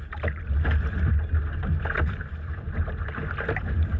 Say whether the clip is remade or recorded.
recorded